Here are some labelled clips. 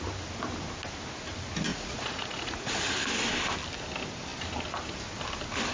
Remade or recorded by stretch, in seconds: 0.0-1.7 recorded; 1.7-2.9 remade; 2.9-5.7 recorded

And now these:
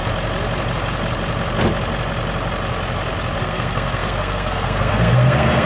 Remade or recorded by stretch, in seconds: 0.0-3.4 recorded; 3.4-5.7 remade